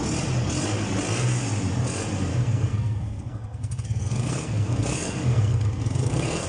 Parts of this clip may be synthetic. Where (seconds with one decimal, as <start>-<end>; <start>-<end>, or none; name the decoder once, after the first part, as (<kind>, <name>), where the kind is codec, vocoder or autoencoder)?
2.3-6.5 (codec, SNAC)